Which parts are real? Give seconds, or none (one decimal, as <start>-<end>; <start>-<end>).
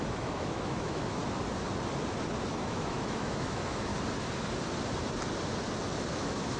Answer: 1.2-2.5; 3.9-6.1